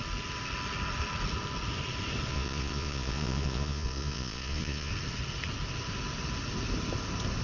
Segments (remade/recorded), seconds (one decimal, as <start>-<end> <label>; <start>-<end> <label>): 0.0-2.3 recorded; 2.3-4.9 remade; 4.9-7.4 recorded